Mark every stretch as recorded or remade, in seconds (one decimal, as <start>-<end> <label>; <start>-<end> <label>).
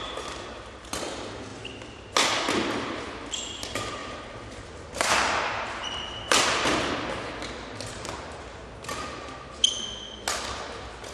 0.0-4.0 recorded; 4.0-6.9 remade; 6.9-11.1 recorded